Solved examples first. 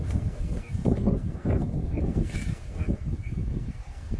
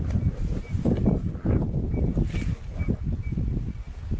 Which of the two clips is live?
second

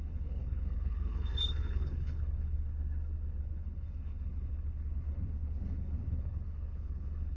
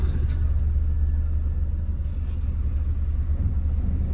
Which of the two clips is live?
second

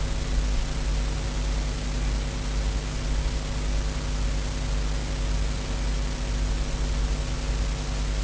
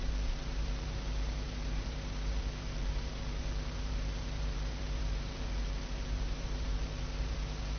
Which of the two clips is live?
first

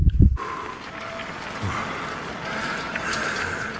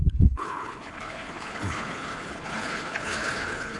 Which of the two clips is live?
first